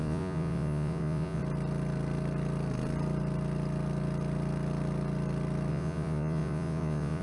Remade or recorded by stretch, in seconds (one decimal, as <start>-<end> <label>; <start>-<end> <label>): 0.0-1.4 remade; 1.4-5.7 recorded; 5.7-7.2 remade